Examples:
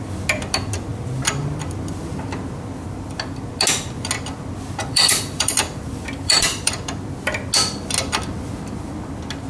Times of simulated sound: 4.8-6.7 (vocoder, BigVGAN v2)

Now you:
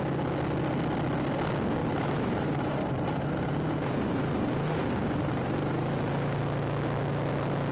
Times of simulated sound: 1.8-6.4 (vocoder, BigVGAN v2)